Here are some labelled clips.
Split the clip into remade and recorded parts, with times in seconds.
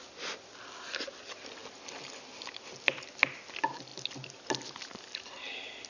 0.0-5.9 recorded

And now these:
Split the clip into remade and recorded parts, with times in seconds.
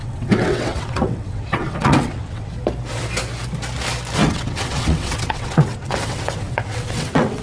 0.0-2.5 remade; 2.5-4.2 recorded; 4.2-7.4 remade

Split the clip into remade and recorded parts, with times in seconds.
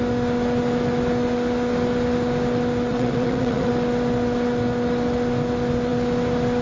0.0-2.9 recorded; 2.9-3.7 remade; 3.7-6.6 recorded